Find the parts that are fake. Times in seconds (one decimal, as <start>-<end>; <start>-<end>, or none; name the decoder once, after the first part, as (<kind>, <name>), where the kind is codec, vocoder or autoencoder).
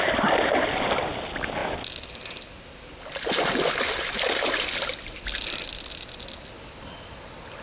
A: none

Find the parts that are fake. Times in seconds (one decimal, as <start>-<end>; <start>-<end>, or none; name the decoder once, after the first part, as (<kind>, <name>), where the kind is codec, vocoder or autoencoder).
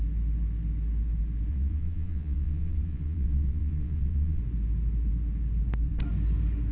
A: 1.5-4.4 (vocoder, Vocos)